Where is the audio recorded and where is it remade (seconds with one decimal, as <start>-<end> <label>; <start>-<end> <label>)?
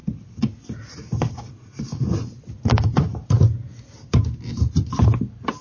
0.0-5.6 recorded